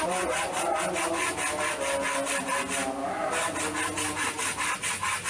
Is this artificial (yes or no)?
no